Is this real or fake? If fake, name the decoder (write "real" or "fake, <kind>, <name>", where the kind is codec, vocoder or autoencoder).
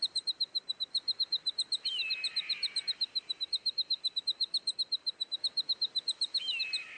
real